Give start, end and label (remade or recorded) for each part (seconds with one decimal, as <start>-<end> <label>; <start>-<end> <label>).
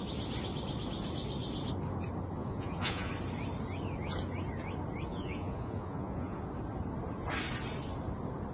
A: 0.0-2.4 recorded; 2.4-3.1 remade; 3.1-5.1 recorded; 5.1-6.4 remade; 6.4-8.5 recorded